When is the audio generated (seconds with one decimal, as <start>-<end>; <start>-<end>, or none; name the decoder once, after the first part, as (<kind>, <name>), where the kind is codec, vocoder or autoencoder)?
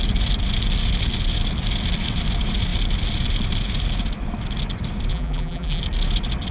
5.1-5.8 (vocoder, BigVGAN v2)